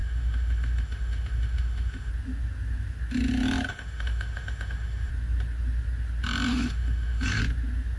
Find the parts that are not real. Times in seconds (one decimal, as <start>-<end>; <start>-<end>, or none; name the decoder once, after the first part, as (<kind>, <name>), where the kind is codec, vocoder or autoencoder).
0.0-2.1 (autoencoder, DAC-VAE); 3.7-5.1; 6.5-7.4